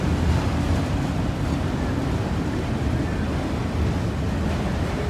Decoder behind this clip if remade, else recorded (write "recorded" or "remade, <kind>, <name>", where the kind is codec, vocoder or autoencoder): recorded